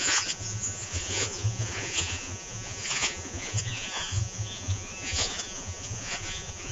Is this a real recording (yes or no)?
no